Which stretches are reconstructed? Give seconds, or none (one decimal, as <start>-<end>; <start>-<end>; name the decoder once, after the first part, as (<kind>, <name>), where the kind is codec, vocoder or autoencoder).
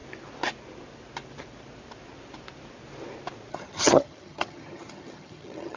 3.5-5.8 (vocoder, HiFi-GAN)